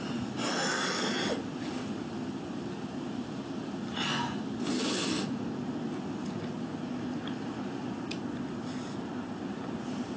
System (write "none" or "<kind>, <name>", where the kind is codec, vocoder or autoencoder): none